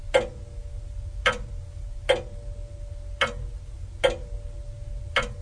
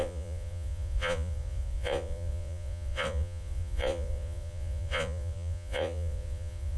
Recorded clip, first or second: first